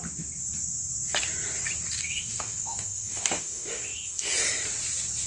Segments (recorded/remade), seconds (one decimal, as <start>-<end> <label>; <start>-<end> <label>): 0.0-2.0 recorded; 2.0-4.3 remade; 4.3-5.3 recorded